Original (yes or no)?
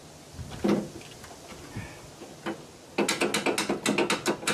yes